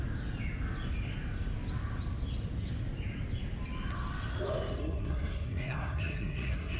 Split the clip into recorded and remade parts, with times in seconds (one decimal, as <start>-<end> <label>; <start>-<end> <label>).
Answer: 0.0-4.8 recorded; 4.8-6.8 remade

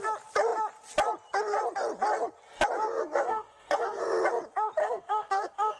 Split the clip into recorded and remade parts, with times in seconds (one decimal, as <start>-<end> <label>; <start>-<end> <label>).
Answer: 0.0-3.0 recorded; 3.0-4.0 remade; 4.0-4.8 recorded; 4.8-5.8 remade

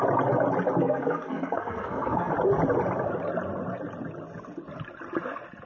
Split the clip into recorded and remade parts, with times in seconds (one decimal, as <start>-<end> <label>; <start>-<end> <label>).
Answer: 0.0-0.8 recorded; 0.8-2.3 remade; 2.3-5.7 recorded

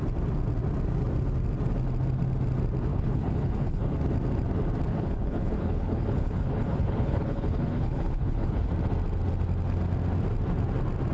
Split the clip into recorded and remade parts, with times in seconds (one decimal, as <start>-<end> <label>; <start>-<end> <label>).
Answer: 0.0-2.9 recorded; 2.9-4.0 remade; 4.0-4.9 recorded; 4.9-8.7 remade; 8.7-11.1 recorded

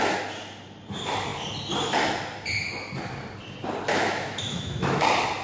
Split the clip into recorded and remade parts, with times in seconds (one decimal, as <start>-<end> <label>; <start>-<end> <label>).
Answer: 0.0-3.9 recorded; 3.9-5.0 remade; 5.0-5.4 recorded

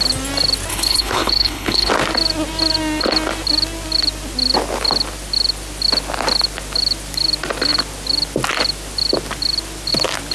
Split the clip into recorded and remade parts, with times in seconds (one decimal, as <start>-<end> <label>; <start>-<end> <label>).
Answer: 0.0-0.7 recorded; 0.7-1.9 remade; 1.9-10.3 recorded

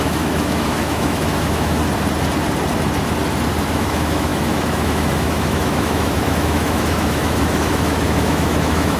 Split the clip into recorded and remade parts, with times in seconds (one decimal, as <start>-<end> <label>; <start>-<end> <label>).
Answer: 0.0-1.8 remade; 1.8-3.6 recorded; 3.6-9.0 remade

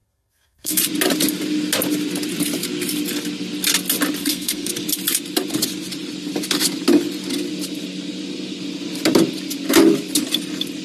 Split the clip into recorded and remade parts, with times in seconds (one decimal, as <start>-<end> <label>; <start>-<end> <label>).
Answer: 0.0-0.8 remade; 0.8-4.2 recorded; 4.2-4.7 remade; 4.7-10.8 recorded